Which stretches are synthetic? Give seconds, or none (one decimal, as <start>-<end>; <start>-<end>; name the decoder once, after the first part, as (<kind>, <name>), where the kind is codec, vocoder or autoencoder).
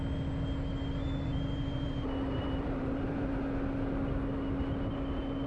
1.0-3.4 (vocoder, BigVGAN v2)